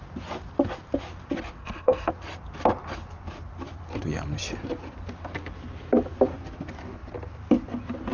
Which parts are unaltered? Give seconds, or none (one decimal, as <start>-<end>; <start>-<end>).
0.0-1.6; 2.1-8.1